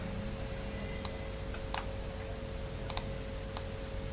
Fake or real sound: real